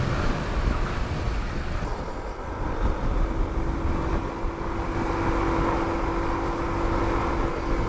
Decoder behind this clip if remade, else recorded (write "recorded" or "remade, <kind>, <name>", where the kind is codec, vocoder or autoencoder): recorded